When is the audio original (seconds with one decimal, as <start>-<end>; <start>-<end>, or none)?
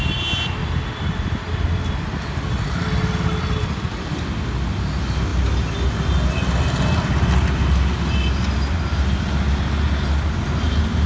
0.0-11.1